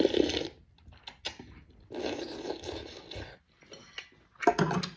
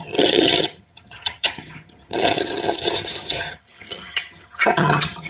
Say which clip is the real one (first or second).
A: first